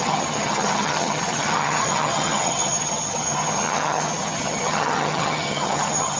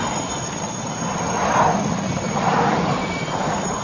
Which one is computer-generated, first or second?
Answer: first